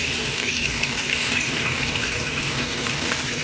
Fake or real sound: fake